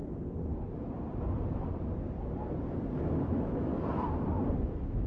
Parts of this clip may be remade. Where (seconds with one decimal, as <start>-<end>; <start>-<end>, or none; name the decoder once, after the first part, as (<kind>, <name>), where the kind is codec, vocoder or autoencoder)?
3.0-3.7 (autoencoder, DAC-VAE); 4.6-5.1